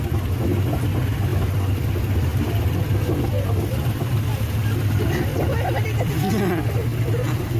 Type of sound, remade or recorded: recorded